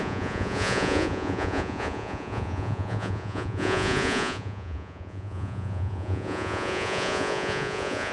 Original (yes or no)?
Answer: no